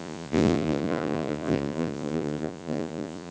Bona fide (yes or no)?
no